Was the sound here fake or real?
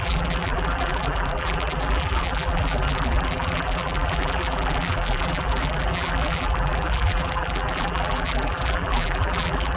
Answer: fake